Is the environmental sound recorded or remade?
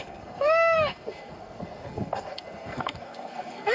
remade